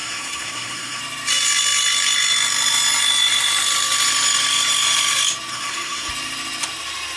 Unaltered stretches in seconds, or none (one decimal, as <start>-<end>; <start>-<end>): 1.0-5.5; 6.1-7.2